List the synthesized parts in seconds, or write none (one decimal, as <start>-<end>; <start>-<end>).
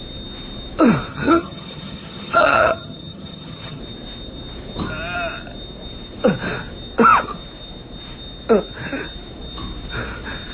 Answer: 1.1-3.8